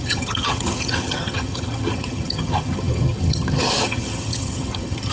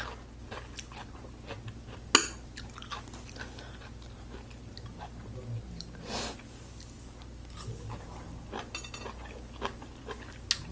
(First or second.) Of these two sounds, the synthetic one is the first